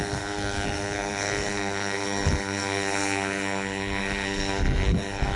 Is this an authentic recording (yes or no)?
no